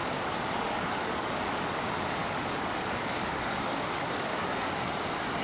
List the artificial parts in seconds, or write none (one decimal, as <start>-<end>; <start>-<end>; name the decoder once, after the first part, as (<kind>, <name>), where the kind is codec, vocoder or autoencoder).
0.0-1.3 (codec, DAC); 2.2-5.0